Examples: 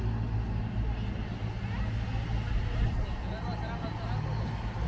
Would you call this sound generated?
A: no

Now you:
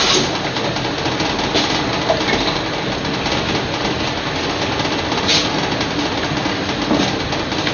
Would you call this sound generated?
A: no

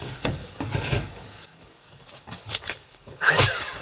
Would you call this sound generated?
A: yes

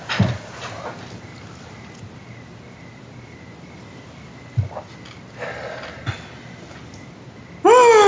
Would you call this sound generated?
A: no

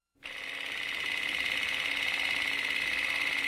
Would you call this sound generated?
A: no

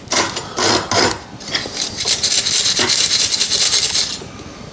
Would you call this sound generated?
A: no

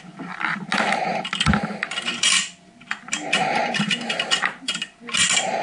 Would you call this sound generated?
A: no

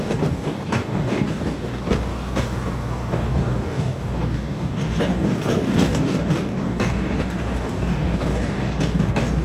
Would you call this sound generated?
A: yes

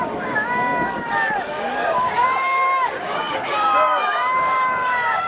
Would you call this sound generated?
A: yes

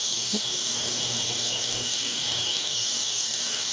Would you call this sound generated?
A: yes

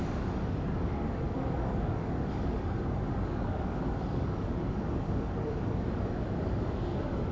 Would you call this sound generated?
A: yes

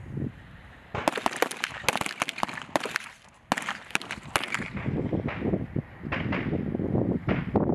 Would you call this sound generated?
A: no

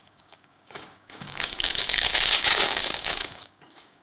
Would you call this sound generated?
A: yes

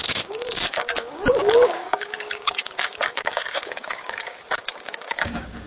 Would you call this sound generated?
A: yes